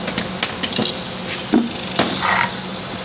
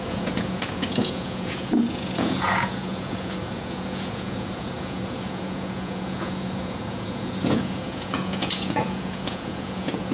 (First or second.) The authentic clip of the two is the first